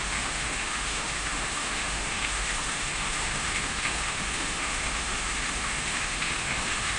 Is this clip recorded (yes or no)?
no